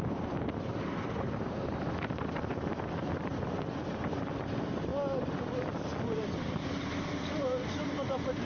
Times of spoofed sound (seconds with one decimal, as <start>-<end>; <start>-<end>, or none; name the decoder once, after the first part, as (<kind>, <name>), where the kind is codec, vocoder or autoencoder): 0.0-3.3 (vocoder, BigVGAN v2); 3.9-4.9; 7.1-8.4